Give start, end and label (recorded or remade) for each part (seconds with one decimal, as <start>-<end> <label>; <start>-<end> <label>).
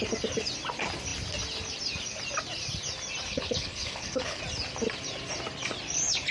0.0-3.3 recorded; 3.3-4.4 remade; 4.4-6.3 recorded